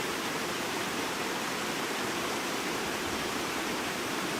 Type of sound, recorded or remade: remade